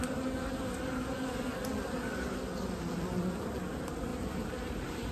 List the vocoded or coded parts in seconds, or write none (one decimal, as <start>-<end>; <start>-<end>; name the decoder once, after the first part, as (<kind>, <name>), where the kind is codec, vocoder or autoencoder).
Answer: 4.1-5.1 (vocoder, BigVGAN v2)